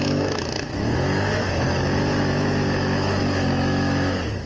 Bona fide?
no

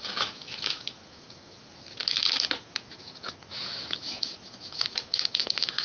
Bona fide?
no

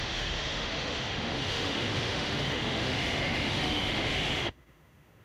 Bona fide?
no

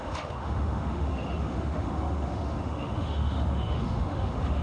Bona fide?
no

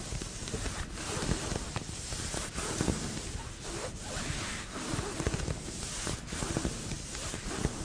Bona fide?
yes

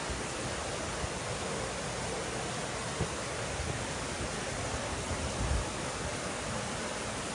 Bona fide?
yes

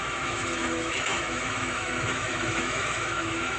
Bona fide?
no